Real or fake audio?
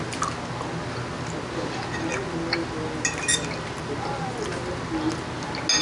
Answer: real